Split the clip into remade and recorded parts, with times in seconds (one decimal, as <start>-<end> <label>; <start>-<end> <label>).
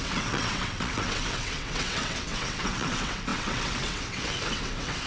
0.0-5.1 remade